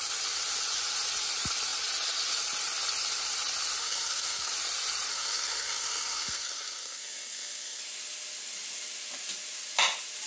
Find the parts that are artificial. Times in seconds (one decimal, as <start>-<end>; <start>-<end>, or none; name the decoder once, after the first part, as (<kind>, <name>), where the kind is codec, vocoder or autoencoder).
3.8-4.5 (codec, SNAC); 5.1-7.8